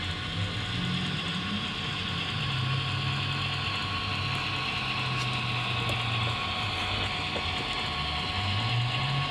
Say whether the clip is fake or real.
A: real